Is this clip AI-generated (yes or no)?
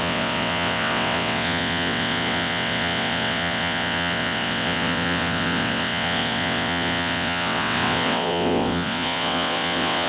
yes